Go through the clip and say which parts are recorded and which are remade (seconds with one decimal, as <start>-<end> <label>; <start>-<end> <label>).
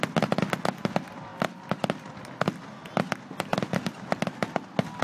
0.0-5.0 recorded